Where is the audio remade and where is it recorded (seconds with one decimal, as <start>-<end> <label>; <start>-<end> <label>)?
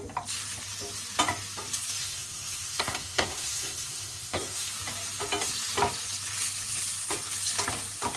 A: 0.0-2.0 recorded; 2.0-4.7 remade; 4.7-8.2 recorded